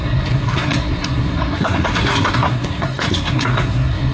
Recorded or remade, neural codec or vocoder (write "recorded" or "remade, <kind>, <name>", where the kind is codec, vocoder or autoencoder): remade, codec, SNAC